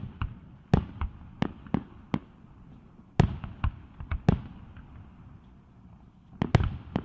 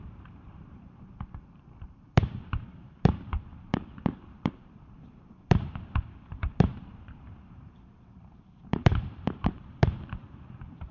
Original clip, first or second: first